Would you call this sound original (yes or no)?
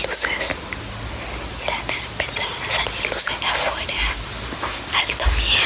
yes